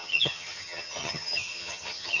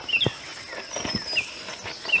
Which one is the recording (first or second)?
second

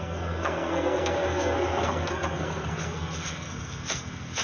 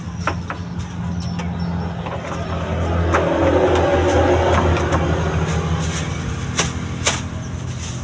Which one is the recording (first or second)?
second